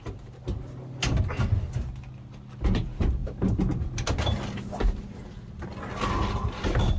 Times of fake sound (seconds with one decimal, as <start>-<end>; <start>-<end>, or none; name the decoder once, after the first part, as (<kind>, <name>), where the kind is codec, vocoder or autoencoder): none